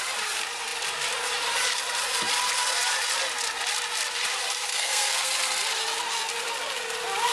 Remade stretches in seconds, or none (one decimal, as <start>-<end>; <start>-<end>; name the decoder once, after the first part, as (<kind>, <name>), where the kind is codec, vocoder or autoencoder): 4.7-5.3 (codec, SNAC)